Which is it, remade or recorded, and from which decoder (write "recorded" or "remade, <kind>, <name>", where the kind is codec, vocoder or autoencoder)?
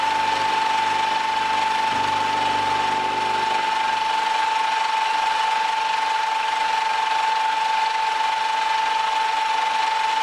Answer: recorded